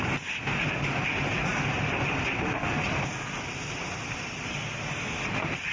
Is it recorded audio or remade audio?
recorded